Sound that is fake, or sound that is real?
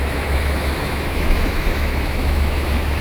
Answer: fake